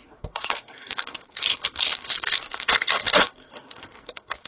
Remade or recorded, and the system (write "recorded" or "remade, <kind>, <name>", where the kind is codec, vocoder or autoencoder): remade, codec, SNAC